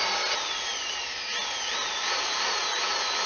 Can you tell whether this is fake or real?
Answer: fake